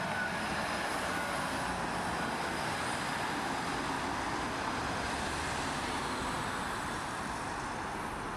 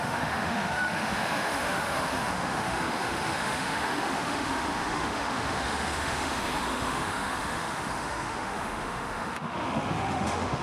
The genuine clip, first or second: first